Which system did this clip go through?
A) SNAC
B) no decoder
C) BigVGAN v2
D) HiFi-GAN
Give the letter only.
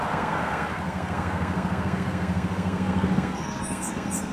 A